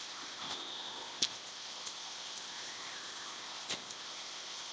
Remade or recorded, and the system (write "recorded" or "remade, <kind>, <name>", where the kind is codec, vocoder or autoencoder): remade, codec, ZipCodec